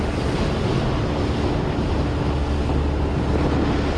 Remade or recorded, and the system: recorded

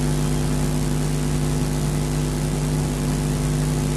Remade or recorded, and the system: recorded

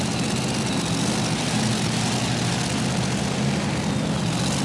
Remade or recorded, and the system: recorded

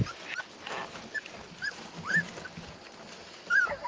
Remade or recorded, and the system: recorded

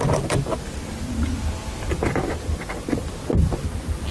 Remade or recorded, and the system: recorded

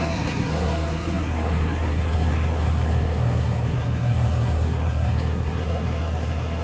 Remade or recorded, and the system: remade, codec, SNAC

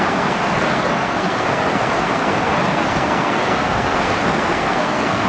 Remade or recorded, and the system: remade, codec, SNAC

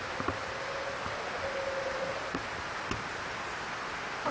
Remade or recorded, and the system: recorded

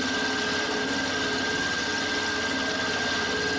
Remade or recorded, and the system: recorded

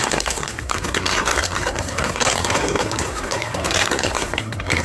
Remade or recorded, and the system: remade, codec, SNAC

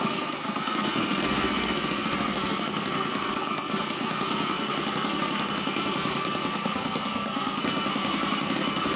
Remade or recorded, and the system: remade, codec, SNAC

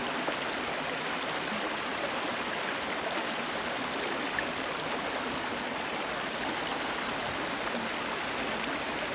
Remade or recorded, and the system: recorded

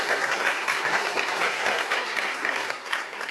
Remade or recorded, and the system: remade, codec, SNAC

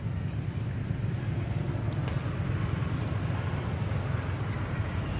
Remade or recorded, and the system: recorded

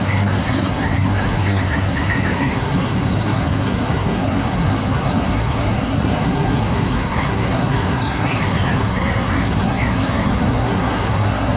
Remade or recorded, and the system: remade, codec, SNAC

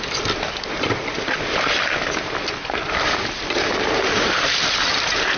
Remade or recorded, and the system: recorded